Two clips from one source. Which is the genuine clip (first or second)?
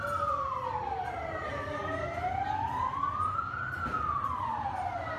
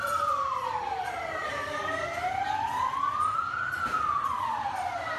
first